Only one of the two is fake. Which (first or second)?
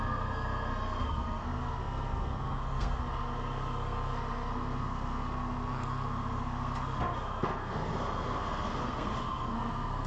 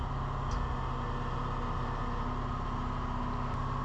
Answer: first